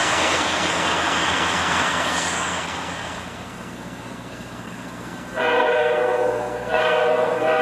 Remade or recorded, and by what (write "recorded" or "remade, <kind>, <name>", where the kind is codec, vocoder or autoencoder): remade, codec, SNAC